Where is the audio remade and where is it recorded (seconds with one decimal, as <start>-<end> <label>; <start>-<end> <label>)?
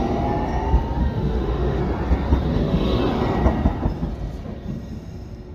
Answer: 0.0-1.0 recorded; 1.0-1.8 remade; 1.8-2.5 recorded; 2.5-3.0 remade; 3.0-5.5 recorded